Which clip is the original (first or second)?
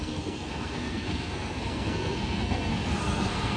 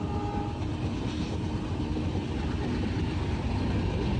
second